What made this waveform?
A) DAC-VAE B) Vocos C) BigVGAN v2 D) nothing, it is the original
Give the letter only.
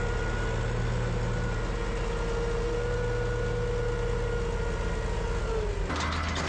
D